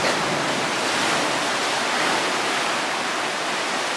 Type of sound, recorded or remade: recorded